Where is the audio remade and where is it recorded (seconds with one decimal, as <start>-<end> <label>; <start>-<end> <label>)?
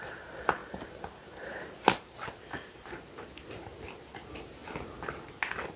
0.0-4.6 remade; 4.6-5.8 recorded